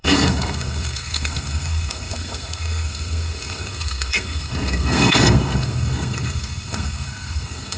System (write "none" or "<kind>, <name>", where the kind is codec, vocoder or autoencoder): codec, SNAC